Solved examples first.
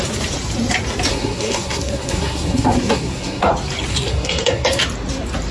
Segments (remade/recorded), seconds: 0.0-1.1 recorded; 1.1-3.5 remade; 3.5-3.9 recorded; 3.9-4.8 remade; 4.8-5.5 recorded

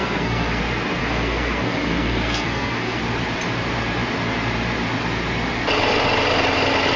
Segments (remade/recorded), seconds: 0.0-0.6 remade; 0.6-1.0 recorded; 1.0-3.0 remade; 3.0-7.0 recorded